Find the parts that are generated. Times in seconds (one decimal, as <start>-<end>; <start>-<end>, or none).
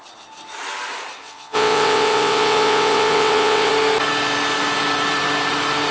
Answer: 1.2-3.7